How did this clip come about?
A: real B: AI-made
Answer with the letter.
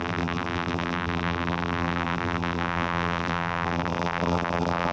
B